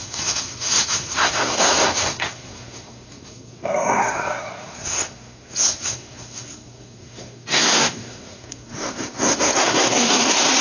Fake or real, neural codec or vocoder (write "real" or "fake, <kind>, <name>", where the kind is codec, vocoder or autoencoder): fake, codec, SNAC